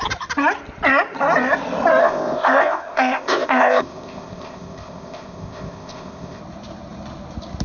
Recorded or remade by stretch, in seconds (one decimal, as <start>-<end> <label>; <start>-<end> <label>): 0.0-2.0 recorded; 2.0-6.4 remade; 6.4-7.6 recorded

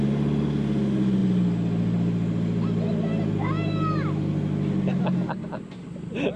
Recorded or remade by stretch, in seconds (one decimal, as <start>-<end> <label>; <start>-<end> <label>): 0.0-6.4 recorded